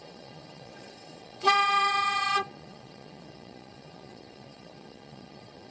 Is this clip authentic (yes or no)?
no